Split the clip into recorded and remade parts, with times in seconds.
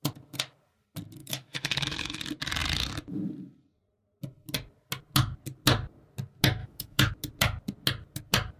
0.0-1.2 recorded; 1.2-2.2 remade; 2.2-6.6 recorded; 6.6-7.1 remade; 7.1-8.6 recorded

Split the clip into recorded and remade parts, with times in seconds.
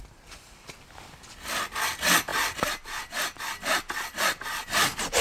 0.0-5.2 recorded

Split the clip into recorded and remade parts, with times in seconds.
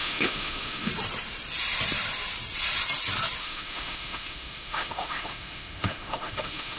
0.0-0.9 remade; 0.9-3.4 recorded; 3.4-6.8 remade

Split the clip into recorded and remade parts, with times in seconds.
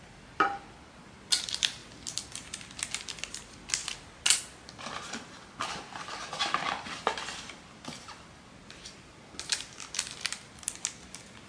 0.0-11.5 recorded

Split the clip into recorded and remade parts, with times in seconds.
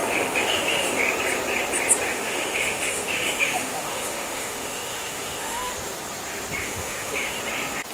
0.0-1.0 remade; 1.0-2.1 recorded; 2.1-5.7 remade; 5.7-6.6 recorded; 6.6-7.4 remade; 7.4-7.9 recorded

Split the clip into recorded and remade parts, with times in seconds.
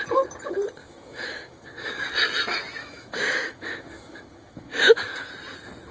0.0-0.8 recorded; 0.8-2.0 remade; 2.0-2.8 recorded; 2.8-5.3 remade; 5.3-5.9 recorded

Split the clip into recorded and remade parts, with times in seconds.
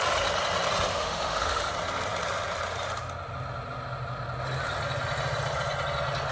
0.0-0.9 recorded; 0.9-1.7 remade; 1.7-6.3 recorded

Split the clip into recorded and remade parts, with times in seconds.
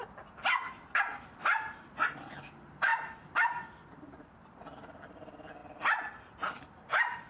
0.0-7.3 recorded